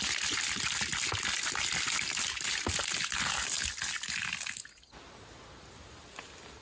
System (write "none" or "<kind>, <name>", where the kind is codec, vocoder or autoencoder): none